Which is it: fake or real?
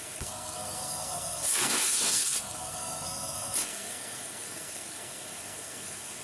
fake